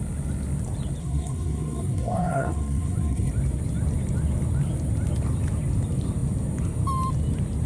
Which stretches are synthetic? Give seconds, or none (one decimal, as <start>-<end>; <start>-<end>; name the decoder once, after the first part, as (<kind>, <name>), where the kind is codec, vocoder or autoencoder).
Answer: 1.0-3.3 (codec, SNAC)